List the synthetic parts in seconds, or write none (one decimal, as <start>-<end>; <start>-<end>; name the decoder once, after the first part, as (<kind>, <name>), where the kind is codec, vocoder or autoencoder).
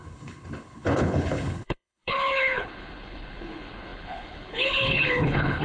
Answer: 0.0-5.6 (codec, HILCodec)